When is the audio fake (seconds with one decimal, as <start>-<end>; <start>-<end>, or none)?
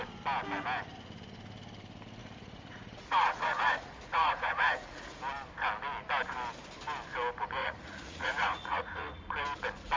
2.2-5.2; 7.6-9.2